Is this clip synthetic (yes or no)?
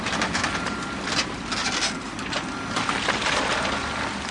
no